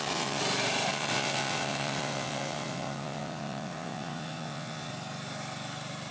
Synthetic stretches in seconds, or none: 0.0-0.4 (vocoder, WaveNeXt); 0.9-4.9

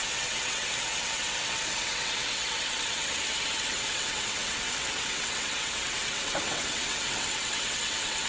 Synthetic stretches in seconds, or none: 0.0-8.3 (vocoder, WaveNeXt)

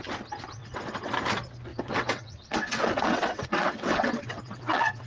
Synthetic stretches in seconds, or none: 0.6-1.1 (vocoder, WaveNeXt); 1.7-5.1

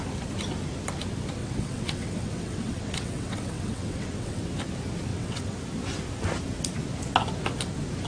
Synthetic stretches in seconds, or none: 1.4-4.4 (vocoder, WaveNeXt); 5.1-5.6

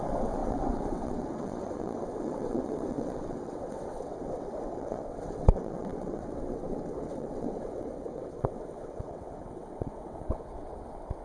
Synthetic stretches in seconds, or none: 0.0-11.2 (vocoder, WaveNeXt)

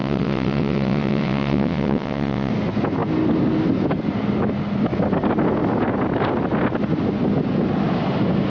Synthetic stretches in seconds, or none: 0.0-2.5 (vocoder, WaveNeXt)